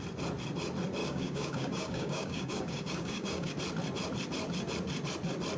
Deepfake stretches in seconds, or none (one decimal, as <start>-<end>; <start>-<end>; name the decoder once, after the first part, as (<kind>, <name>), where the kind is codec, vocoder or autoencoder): 1.0-3.5 (codec, DAC)

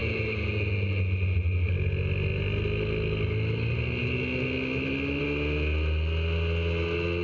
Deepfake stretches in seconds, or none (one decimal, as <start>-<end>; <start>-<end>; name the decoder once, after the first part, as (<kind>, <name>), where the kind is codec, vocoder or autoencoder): none

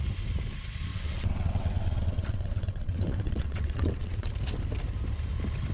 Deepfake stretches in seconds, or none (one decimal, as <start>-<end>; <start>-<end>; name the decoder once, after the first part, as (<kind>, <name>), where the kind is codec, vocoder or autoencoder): 0.9-4.3 (vocoder, WaveNeXt)